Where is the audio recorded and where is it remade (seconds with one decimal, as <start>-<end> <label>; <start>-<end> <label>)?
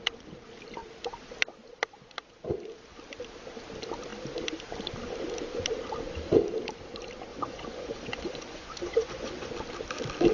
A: 0.0-7.3 recorded; 7.3-9.5 remade; 9.5-10.3 recorded